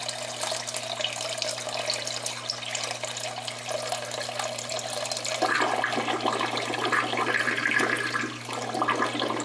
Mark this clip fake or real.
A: real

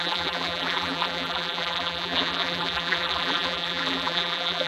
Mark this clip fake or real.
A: fake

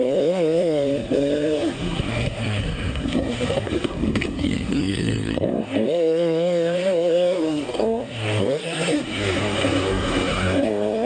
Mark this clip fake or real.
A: fake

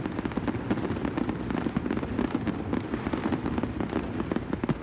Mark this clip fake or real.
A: real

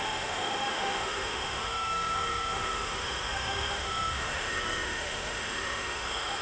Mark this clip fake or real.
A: fake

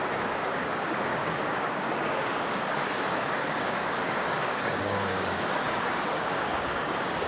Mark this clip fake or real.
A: fake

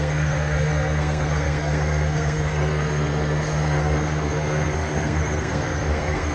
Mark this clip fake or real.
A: fake